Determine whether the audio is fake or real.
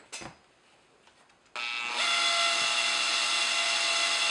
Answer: real